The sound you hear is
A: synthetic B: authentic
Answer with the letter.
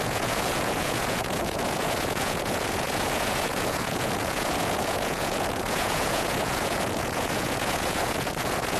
A